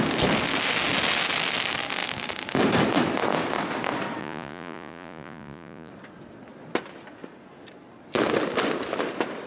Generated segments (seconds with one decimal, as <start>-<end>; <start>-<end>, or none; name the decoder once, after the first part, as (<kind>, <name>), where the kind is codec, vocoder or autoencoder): 4.2-5.9 (vocoder, Vocos)